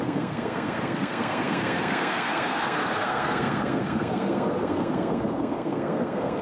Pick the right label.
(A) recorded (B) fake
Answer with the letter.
B